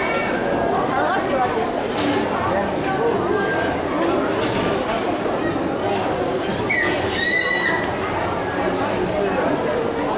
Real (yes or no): yes